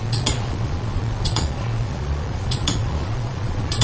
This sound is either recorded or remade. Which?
remade